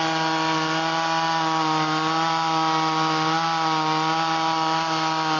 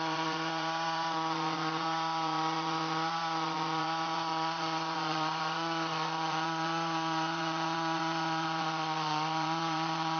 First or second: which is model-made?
second